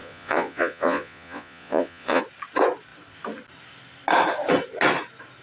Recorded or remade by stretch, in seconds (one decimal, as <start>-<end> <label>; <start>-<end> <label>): 0.0-2.2 remade; 2.2-5.4 recorded